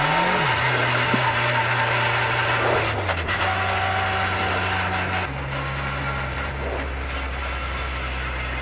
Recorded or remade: recorded